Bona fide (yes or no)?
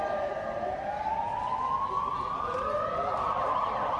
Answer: no